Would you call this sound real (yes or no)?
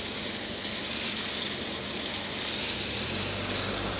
yes